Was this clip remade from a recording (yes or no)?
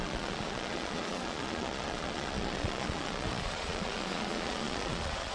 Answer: yes